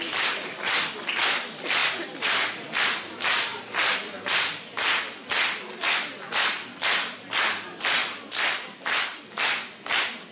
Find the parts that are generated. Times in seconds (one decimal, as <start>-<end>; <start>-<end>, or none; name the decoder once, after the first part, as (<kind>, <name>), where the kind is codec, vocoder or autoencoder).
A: none